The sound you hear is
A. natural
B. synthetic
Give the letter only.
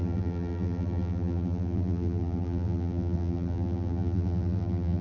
B